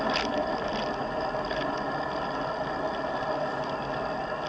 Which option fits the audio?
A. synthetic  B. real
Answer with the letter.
B